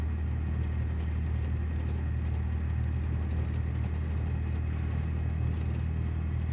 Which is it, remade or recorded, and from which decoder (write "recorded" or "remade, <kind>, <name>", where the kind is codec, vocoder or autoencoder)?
recorded